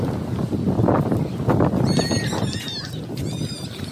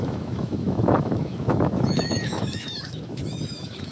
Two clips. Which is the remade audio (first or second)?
second